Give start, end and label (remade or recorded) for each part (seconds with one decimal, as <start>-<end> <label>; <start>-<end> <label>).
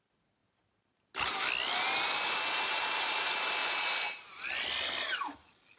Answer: 0.0-5.8 recorded